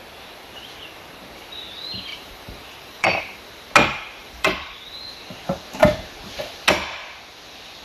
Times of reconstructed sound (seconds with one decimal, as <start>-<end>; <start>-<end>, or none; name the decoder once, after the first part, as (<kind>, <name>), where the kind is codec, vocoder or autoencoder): 2.1-3.4 (vocoder, BigVGAN v2); 4.2-5.0